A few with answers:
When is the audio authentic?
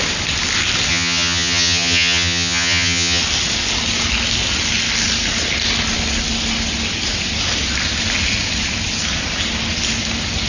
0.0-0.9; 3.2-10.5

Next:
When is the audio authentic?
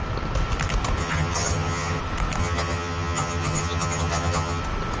0.0-1.0; 2.0-2.4; 4.6-5.0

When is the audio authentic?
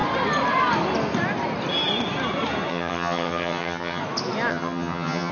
0.0-2.7; 4.0-4.5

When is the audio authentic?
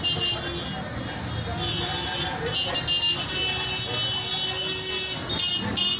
0.0-6.0